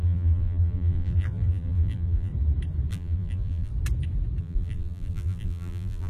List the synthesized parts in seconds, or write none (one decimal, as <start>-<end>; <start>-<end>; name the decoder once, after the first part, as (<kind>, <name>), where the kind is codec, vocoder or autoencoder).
0.0-2.3 (vocoder, BigVGAN v2); 2.9-3.7; 4.4-6.1